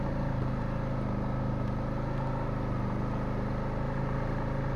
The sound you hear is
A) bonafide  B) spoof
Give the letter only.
A